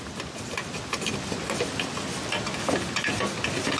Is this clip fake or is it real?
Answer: real